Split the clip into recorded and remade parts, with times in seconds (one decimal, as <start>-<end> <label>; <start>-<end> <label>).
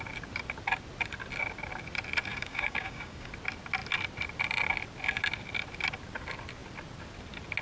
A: 0.0-2.3 recorded; 2.3-3.3 remade; 3.3-7.6 recorded